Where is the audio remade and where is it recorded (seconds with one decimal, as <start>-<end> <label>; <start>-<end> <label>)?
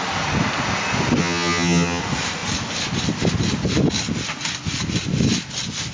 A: 0.0-1.2 recorded; 1.2-2.0 remade; 2.0-5.9 recorded